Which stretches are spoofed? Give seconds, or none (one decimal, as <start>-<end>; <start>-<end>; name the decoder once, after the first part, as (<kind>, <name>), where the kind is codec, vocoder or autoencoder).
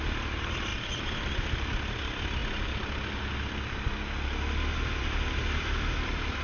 none